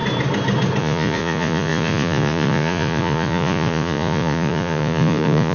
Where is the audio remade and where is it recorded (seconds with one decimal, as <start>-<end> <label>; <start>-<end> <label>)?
0.0-0.8 recorded; 0.8-5.5 remade